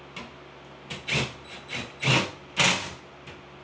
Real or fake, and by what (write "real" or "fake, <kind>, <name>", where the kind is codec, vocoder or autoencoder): real